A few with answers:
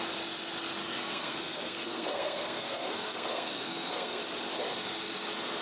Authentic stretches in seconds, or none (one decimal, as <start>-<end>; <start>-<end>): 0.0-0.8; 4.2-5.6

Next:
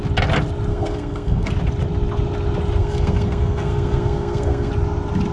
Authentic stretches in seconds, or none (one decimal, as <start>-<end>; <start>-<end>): 0.0-0.7; 1.5-2.8; 4.7-5.3

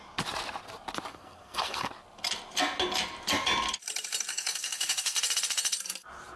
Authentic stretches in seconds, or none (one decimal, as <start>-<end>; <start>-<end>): 0.0-1.1; 1.9-4.3; 5.2-6.4

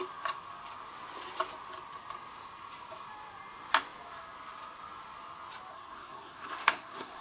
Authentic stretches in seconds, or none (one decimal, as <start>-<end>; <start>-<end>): 0.0-5.7

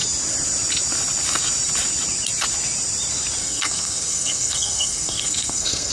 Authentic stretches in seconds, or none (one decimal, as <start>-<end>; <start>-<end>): 0.0-3.4